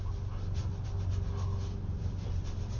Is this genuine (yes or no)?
yes